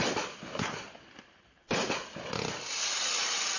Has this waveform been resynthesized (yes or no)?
no